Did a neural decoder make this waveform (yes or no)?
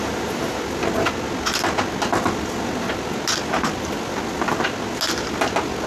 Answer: no